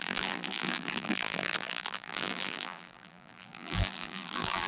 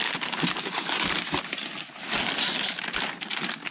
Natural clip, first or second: second